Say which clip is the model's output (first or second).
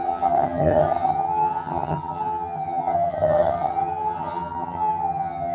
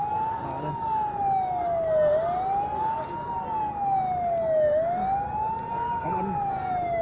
first